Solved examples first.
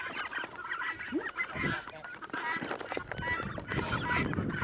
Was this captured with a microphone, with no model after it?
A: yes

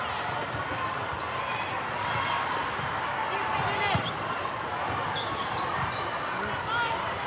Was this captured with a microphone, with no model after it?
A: yes